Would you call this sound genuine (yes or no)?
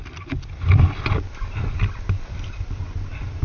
yes